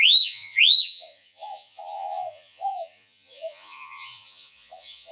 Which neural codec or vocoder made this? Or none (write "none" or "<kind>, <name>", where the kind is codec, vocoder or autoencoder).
vocoder, Vocos